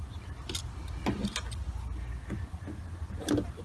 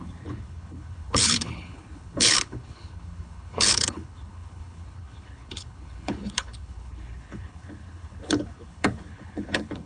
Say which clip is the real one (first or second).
first